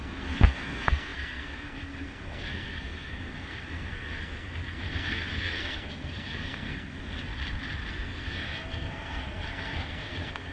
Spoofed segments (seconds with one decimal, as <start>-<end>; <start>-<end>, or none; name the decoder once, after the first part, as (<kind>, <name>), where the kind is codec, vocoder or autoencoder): 0.0-7.3 (codec, SNAC); 7.9-10.5